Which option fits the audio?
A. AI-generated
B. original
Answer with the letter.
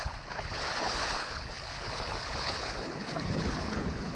A